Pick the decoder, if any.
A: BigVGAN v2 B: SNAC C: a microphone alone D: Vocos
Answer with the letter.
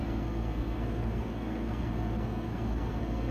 B